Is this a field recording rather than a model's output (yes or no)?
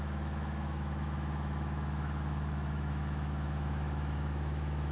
no